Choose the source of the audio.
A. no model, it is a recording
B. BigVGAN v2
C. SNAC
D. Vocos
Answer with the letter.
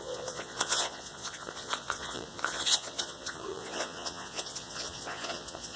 D